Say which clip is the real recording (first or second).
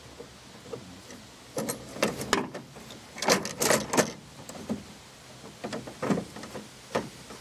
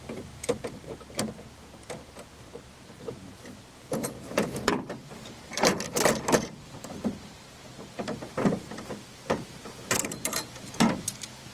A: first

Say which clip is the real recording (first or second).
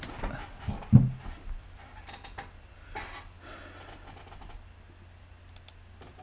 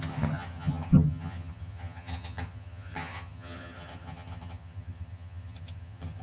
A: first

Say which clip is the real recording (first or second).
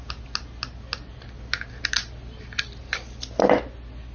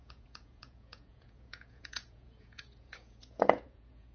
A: first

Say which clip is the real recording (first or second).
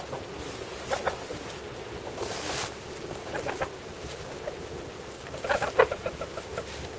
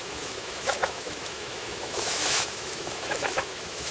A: first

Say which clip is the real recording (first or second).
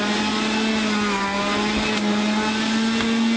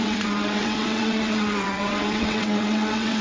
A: first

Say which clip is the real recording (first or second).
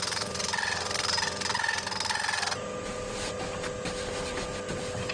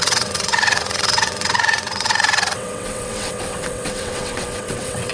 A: first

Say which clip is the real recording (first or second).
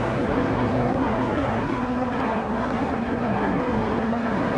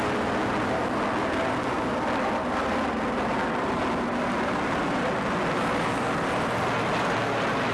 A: second